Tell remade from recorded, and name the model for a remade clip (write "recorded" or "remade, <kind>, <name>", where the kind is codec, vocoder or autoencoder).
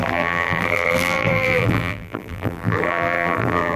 remade, vocoder, BigVGAN v2